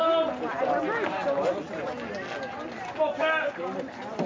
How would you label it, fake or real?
real